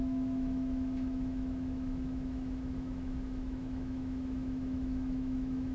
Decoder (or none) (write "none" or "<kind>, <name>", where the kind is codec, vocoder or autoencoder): autoencoder, DAC-VAE